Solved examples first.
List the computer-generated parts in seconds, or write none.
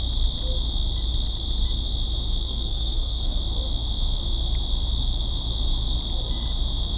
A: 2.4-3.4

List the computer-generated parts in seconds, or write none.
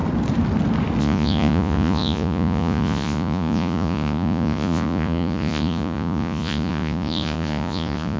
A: 1.0-8.2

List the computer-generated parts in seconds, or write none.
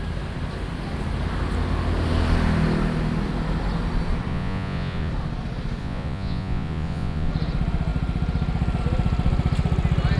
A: 4.3-5.1; 5.8-7.3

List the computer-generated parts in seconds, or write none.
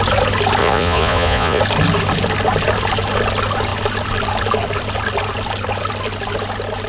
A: 0.6-1.6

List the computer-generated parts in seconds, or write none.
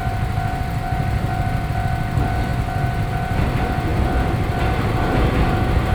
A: none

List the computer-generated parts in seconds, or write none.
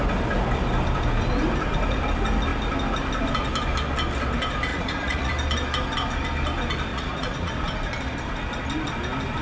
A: 4.7-5.3; 6.9-7.5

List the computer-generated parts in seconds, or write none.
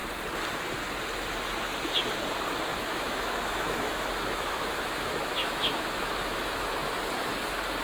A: 2.7-6.7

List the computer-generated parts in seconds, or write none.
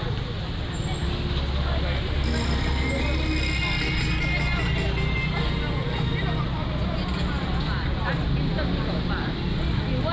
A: none